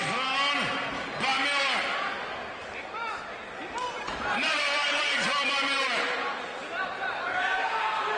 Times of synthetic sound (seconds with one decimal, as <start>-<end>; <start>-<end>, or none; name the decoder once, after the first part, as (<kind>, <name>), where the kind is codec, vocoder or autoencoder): 2.6-7.5 (vocoder, BigVGAN v2)